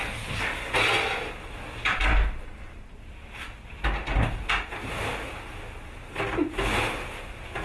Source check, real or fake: real